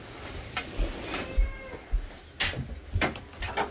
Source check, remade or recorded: recorded